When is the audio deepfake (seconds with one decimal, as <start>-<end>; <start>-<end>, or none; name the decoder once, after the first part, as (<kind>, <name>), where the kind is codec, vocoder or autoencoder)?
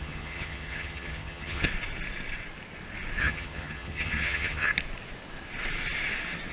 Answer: 0.0-1.7 (vocoder, HiFi-GAN); 3.2-4.7